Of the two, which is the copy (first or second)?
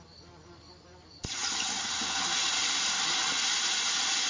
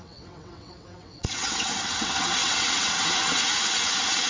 second